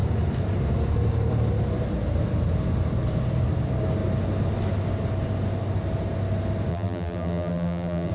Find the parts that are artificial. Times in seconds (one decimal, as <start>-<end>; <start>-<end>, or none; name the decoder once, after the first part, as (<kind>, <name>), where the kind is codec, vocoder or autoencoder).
6.7-8.1 (vocoder, BigVGAN v2)